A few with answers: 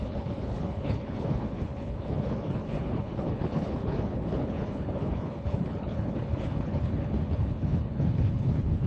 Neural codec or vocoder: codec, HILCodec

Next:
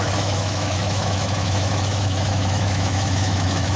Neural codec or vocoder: autoencoder, DAC-VAE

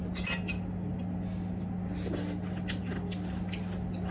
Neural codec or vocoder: none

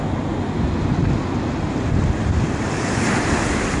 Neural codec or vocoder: none